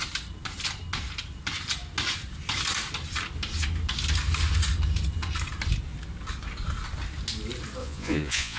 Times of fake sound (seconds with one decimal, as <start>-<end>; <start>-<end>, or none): 7.8-8.6